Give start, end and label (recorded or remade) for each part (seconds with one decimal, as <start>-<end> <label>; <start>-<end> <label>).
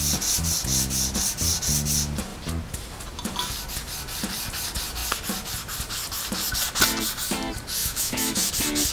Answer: 0.0-7.8 recorded; 7.8-8.5 remade; 8.5-8.9 recorded